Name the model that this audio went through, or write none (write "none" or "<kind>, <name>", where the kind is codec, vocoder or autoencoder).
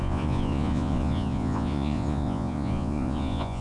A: vocoder, Vocos